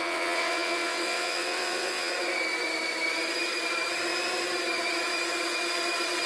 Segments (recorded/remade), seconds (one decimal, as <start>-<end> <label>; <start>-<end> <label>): 0.0-2.1 remade; 2.1-6.3 recorded